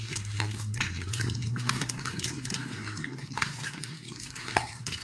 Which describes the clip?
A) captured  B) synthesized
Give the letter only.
B